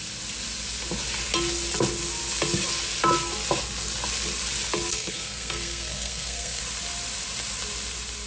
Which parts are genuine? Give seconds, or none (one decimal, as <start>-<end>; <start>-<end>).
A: 0.0-4.9; 6.6-8.3